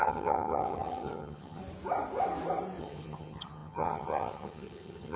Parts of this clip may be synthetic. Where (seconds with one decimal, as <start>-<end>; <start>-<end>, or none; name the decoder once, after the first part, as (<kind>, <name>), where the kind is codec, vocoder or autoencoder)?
0.0-1.6 (vocoder, HiFi-GAN); 2.8-5.2